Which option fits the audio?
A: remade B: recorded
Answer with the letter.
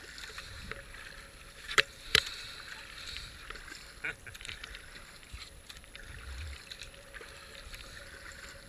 A